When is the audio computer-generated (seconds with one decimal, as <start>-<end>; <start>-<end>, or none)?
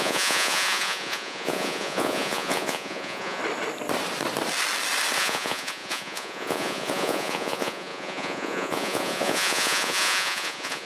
0.0-3.4; 5.2-10.9